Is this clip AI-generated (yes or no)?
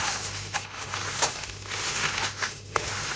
yes